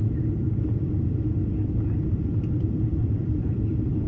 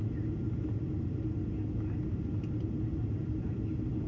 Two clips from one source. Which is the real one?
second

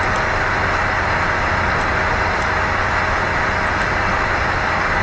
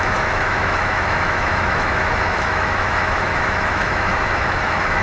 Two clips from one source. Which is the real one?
first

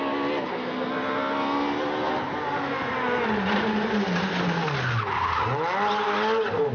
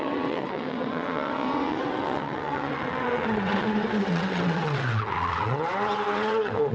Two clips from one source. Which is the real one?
first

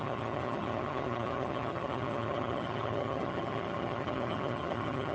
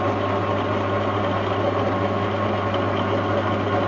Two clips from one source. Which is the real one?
second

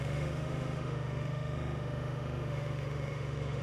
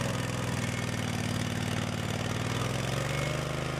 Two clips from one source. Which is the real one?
second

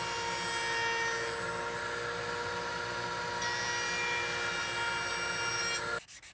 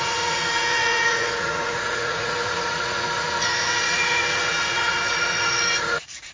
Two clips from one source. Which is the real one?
first